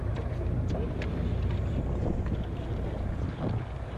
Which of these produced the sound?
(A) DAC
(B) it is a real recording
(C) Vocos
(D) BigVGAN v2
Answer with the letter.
B